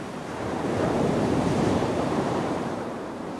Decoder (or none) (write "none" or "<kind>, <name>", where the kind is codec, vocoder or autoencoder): vocoder, BigVGAN v2